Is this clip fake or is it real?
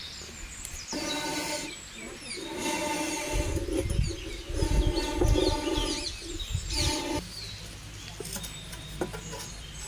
real